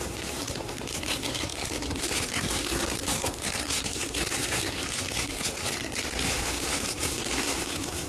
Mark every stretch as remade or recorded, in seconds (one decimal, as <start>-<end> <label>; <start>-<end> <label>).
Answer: 0.0-8.1 remade